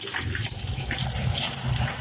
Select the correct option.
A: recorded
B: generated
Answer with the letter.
A